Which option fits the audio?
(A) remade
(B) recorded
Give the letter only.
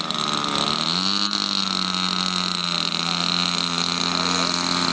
B